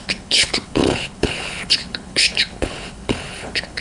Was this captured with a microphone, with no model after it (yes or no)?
no